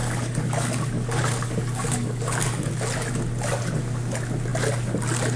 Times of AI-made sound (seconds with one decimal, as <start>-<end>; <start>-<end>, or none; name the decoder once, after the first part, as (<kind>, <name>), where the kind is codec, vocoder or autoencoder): 0.0-2.7 (codec, DAC)